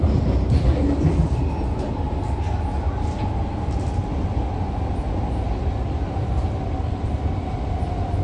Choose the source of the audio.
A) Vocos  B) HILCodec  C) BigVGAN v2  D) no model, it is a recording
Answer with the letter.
D